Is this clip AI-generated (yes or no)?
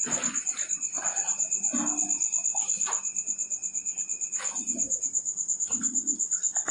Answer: no